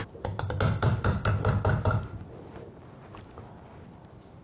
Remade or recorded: recorded